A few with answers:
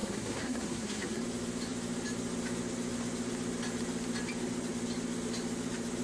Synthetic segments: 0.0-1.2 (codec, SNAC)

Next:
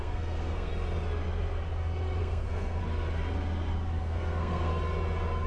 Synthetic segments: 0.0-0.7 (codec, SNAC); 2.2-2.8; 4.0-4.7

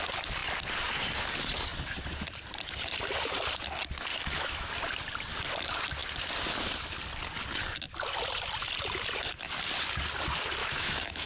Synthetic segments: 4.1-4.7 (autoencoder, DAC-VAE); 10.6-11.3

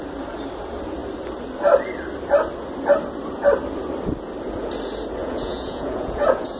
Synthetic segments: 5.2-6.6 (vocoder, Vocos)

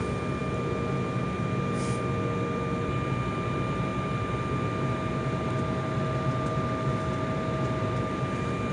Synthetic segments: none

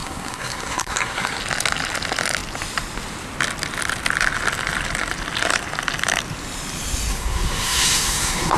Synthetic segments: 0.0-1.4 (codec, SNAC); 7.1-8.6

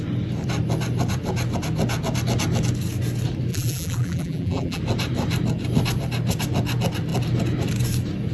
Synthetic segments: 3.5-4.8 (vocoder, BigVGAN v2)

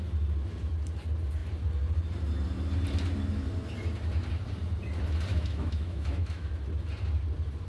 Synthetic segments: 5.3-6.5 (autoencoder, DAC-VAE)